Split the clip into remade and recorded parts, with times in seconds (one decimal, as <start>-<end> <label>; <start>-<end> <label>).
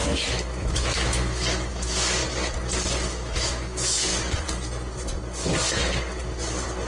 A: 0.0-0.6 recorded; 0.6-2.2 remade; 2.2-3.1 recorded; 3.1-4.1 remade; 4.1-6.9 recorded